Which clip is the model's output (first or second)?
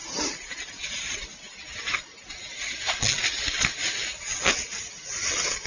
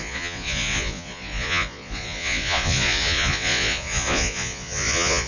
second